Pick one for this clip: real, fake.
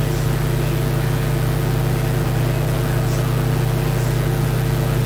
real